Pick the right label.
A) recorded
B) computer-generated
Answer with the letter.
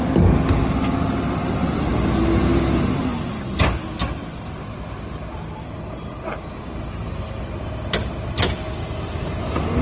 A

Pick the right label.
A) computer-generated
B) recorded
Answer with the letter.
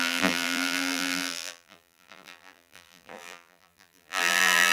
A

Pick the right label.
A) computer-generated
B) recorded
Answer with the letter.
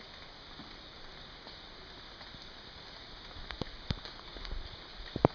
B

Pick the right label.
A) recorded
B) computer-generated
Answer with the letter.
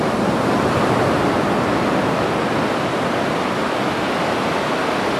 B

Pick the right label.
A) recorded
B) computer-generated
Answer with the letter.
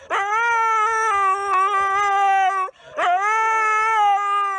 A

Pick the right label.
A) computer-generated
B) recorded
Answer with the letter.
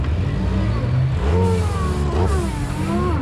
B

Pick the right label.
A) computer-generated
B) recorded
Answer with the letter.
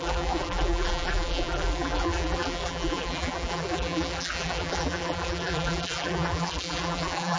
A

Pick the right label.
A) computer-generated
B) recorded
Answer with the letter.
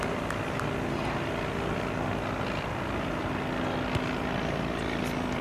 B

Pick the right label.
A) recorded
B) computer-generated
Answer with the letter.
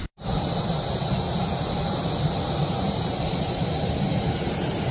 B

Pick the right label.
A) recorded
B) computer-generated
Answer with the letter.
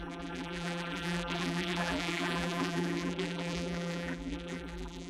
B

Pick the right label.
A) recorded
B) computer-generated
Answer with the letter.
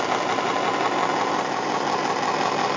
A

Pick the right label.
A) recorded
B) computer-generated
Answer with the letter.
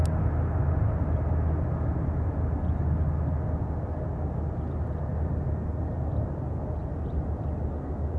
A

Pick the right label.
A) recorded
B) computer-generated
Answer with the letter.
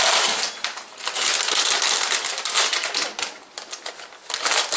A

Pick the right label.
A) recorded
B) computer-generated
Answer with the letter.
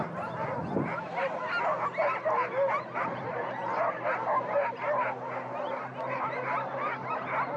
A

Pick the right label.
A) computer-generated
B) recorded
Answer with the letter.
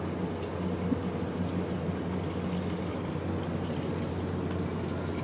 B